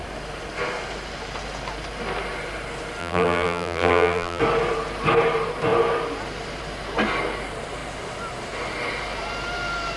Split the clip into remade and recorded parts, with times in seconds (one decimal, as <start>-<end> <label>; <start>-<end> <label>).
0.0-3.0 recorded; 3.0-4.4 remade; 4.4-10.0 recorded

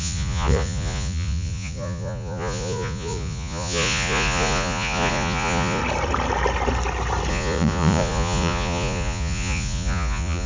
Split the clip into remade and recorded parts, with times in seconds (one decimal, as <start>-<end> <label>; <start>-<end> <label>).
0.0-5.8 remade; 5.8-7.3 recorded; 7.3-10.5 remade

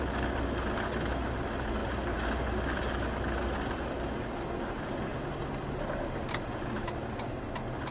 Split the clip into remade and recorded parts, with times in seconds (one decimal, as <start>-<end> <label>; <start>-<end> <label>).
0.0-1.8 recorded; 1.8-2.3 remade; 2.3-7.9 recorded

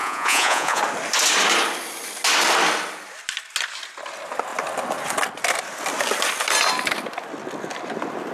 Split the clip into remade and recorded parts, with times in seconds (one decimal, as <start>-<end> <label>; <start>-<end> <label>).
0.0-0.8 remade; 0.8-8.3 recorded

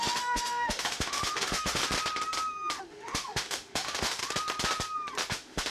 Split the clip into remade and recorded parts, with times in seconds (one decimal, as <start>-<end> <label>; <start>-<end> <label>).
0.0-1.8 remade; 1.8-2.8 recorded; 2.8-4.2 remade; 4.2-5.3 recorded; 5.3-5.7 remade

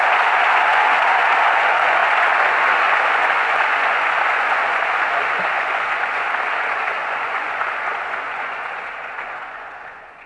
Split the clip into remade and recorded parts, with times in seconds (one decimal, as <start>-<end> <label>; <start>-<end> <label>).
0.0-10.3 remade